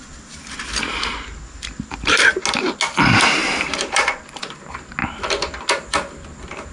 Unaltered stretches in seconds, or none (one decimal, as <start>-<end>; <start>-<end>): 0.0-3.4; 4.4-5.0